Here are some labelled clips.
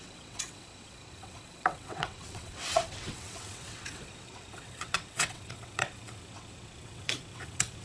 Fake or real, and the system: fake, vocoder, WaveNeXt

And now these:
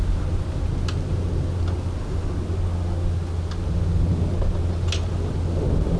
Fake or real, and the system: real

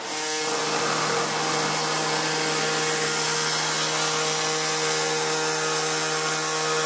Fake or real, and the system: real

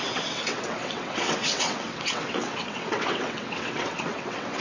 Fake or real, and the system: fake, vocoder, WaveNeXt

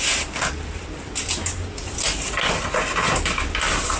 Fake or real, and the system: real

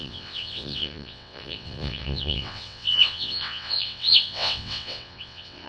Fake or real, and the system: fake, vocoder, WaveNeXt